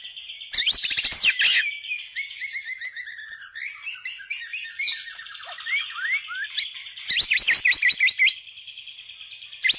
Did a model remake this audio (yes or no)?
no